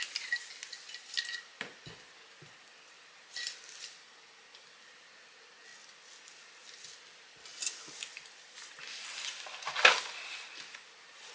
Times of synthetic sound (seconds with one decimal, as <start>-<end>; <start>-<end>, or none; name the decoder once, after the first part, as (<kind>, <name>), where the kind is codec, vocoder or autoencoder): none